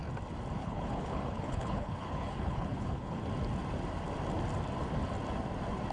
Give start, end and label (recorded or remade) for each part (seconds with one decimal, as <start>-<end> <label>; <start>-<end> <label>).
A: 0.0-0.6 recorded; 0.6-3.2 remade; 3.2-5.9 recorded